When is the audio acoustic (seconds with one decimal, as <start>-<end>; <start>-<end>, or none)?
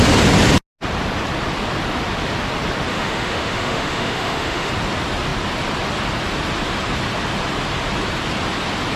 0.0-2.9; 4.7-9.0